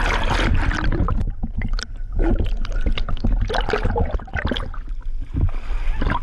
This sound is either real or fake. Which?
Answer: real